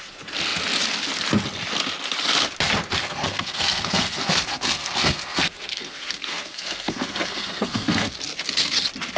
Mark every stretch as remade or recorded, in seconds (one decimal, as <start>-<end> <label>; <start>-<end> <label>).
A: 0.0-3.0 recorded; 3.0-8.1 remade; 8.1-9.2 recorded